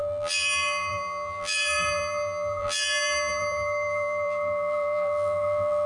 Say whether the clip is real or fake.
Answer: fake